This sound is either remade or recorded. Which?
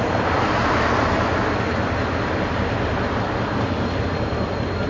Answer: recorded